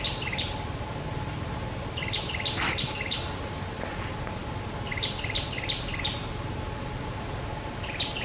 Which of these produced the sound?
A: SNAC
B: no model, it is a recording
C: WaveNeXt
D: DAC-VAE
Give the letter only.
B